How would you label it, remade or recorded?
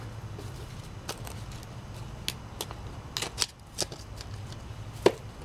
recorded